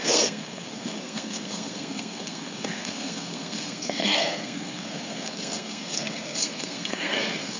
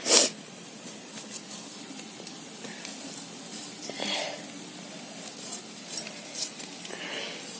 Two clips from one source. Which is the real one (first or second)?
second